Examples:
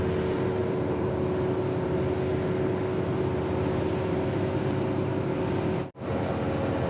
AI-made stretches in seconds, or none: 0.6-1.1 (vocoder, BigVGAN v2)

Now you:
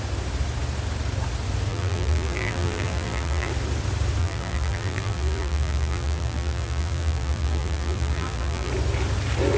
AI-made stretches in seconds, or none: 1.7-3.5 (vocoder, BigVGAN v2); 4.2-8.7